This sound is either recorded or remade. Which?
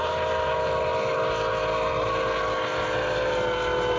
recorded